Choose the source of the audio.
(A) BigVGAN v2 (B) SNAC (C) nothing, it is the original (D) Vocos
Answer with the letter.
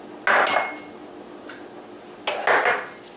C